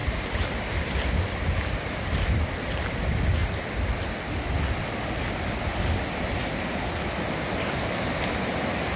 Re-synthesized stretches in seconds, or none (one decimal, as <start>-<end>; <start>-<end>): none